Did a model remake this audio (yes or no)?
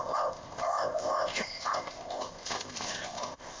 yes